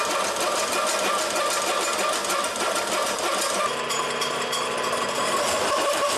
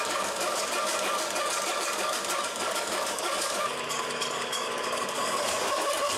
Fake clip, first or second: second